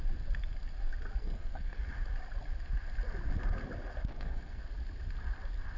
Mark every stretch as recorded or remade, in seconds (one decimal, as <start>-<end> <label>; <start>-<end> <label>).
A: 0.0-1.2 recorded; 1.2-1.8 remade; 1.8-4.1 recorded; 4.1-4.6 remade; 4.6-5.8 recorded